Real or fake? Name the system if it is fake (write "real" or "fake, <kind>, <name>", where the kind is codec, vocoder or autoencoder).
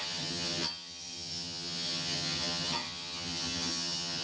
fake, vocoder, HiFi-GAN